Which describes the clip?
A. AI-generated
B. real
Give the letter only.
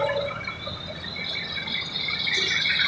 B